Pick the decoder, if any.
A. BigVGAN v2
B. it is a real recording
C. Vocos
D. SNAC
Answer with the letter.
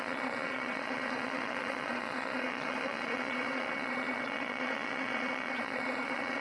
C